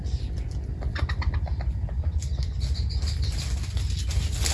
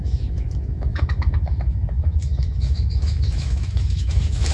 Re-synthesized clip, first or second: second